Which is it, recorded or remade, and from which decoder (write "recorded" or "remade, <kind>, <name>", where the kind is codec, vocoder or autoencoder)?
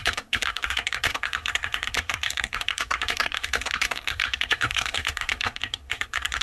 remade, codec, SNAC